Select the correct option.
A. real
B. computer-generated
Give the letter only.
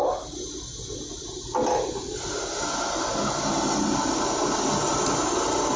A